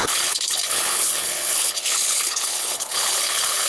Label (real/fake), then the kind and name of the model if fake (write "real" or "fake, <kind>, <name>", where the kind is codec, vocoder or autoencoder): fake, codec, HILCodec